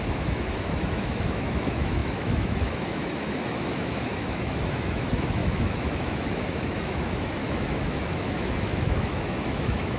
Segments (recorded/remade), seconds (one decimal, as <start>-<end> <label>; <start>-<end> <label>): 0.0-10.0 remade